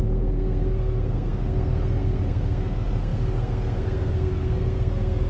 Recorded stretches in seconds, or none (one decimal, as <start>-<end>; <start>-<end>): none